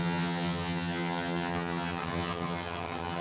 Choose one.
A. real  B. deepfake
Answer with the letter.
B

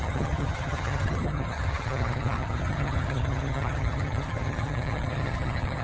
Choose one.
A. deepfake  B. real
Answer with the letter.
A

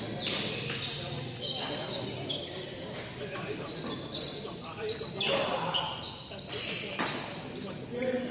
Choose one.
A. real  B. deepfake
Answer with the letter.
A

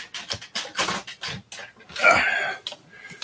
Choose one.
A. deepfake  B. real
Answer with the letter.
B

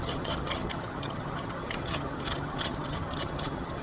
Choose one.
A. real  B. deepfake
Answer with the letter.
B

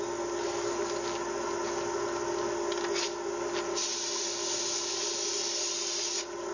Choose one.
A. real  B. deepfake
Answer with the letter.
A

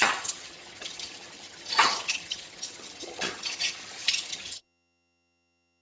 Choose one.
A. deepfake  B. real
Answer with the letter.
A